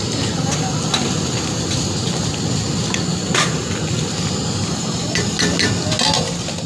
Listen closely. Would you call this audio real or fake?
real